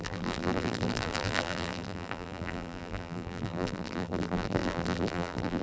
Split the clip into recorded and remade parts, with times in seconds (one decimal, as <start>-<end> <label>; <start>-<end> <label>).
0.0-5.6 remade